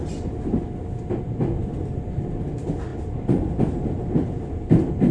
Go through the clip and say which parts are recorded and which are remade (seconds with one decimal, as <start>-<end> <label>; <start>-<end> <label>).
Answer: 0.0-5.1 recorded